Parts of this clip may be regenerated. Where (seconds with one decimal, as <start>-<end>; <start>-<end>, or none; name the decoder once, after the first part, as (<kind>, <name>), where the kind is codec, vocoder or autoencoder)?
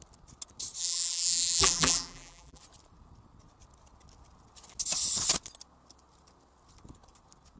0.8-2.6 (vocoder, BigVGAN v2)